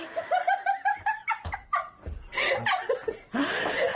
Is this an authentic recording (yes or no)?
yes